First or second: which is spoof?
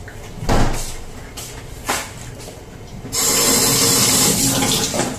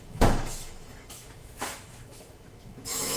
second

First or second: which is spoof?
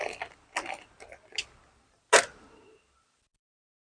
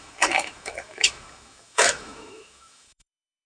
second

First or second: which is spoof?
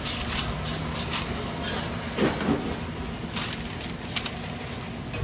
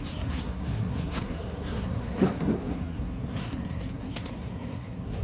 second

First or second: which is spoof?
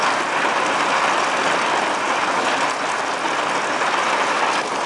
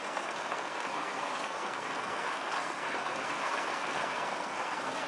second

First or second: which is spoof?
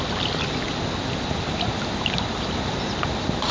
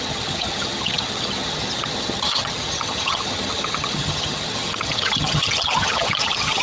second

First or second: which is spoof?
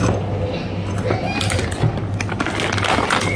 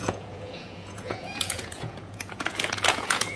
second